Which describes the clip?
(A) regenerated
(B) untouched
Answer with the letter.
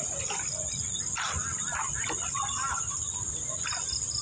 B